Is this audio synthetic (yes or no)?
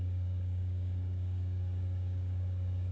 yes